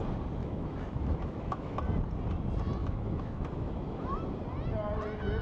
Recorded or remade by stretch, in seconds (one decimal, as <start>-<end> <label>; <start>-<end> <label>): 0.0-0.4 recorded; 0.4-1.8 remade; 1.8-2.8 recorded; 2.8-4.2 remade; 4.2-5.4 recorded